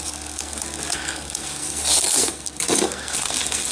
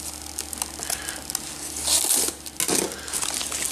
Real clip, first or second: second